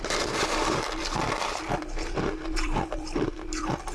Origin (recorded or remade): remade